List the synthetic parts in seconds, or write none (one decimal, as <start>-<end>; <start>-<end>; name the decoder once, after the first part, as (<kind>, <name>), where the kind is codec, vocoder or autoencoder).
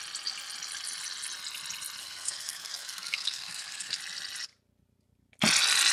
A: 2.0-4.0 (codec, SNAC)